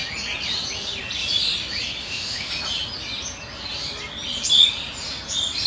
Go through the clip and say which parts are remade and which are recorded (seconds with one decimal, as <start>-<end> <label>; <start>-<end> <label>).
0.0-2.0 recorded; 2.0-2.5 remade; 2.5-5.7 recorded